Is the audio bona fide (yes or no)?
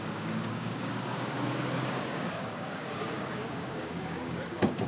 no